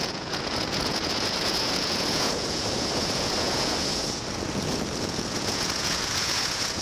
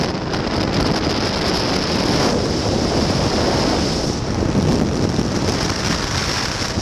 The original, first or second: second